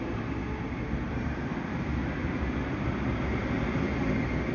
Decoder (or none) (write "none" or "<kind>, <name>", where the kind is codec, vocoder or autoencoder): none